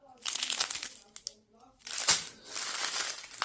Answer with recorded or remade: recorded